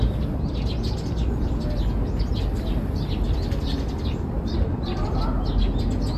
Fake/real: real